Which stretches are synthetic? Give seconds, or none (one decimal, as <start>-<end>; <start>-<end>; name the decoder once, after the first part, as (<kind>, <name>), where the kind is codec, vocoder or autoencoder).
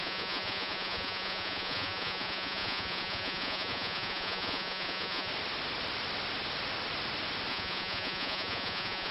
0.0-5.3 (vocoder, Vocos); 7.5-9.1